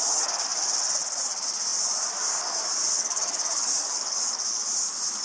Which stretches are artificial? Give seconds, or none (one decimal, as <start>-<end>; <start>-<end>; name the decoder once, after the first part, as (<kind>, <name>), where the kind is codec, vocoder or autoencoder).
2.9-4.4 (codec, DAC)